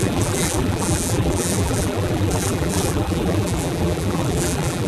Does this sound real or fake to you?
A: fake